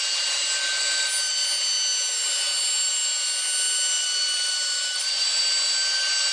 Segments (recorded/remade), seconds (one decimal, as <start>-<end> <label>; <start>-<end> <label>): 0.0-4.0 recorded; 4.0-5.4 remade; 5.4-6.3 recorded